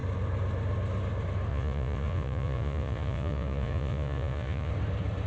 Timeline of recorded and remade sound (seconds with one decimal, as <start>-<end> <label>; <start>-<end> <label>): 0.0-1.5 recorded; 1.5-4.7 remade; 4.7-5.3 recorded